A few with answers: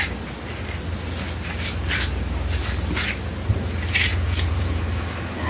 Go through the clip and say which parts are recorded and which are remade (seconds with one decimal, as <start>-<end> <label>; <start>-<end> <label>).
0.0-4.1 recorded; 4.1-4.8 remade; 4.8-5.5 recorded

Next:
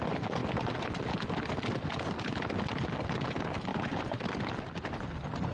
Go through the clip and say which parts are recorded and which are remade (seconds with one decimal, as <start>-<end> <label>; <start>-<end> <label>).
0.0-3.7 recorded; 3.7-4.3 remade; 4.3-5.5 recorded

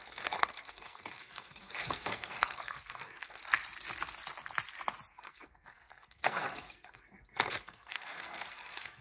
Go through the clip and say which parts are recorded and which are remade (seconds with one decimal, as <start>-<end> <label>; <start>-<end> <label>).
0.0-3.4 remade; 3.4-5.1 recorded; 5.1-9.0 remade

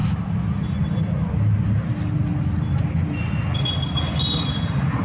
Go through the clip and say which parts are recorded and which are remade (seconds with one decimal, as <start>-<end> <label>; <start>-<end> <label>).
0.0-5.0 recorded

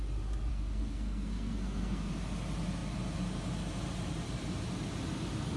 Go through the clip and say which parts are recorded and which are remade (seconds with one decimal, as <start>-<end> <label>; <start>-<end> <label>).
0.0-0.5 recorded; 0.5-2.1 remade; 2.1-5.6 recorded